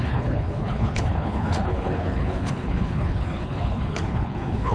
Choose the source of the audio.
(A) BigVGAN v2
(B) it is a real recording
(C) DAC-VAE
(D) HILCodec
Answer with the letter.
D